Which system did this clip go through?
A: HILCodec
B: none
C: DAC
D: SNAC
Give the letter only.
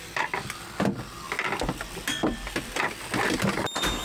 B